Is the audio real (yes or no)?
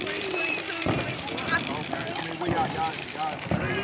no